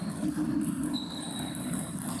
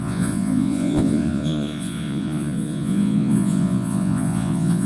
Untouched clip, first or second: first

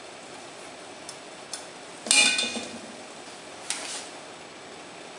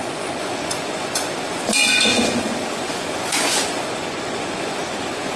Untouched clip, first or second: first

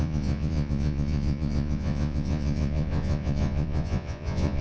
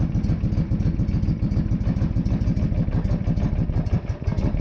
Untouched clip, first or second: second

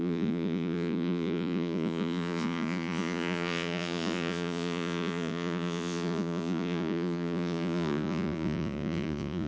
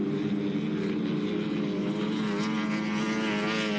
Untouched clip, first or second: second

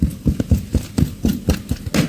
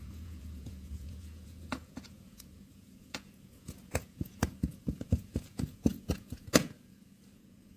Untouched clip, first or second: first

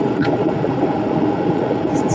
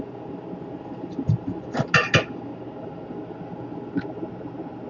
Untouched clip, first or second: second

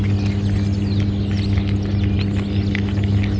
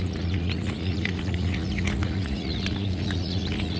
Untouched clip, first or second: first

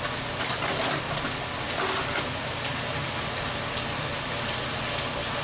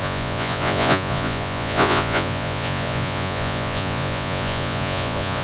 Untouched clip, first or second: first